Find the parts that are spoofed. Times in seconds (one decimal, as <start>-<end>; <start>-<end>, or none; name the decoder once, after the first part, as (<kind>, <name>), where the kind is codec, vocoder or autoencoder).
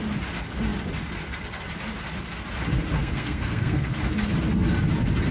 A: 3.0-4.0 (codec, SNAC)